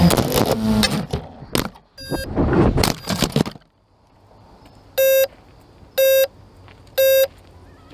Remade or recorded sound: recorded